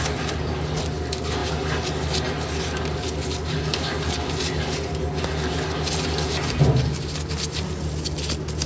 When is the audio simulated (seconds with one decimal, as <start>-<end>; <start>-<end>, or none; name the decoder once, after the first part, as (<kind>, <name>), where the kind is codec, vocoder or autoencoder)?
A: none